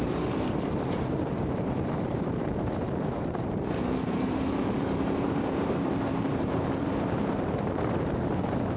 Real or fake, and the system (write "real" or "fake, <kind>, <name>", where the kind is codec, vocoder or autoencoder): fake, vocoder, BigVGAN v2